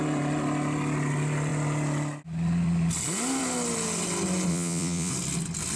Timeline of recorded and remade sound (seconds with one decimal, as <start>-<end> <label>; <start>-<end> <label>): 0.0-4.5 recorded; 4.5-5.1 remade; 5.1-5.8 recorded